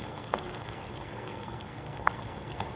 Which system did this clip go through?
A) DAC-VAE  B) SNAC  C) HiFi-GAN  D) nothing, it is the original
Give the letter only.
B